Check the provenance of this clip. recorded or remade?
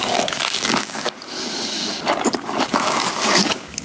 remade